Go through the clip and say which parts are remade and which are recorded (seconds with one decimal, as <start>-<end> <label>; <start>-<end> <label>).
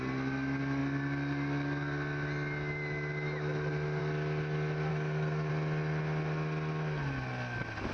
0.0-4.9 recorded; 4.9-5.5 remade; 5.5-7.9 recorded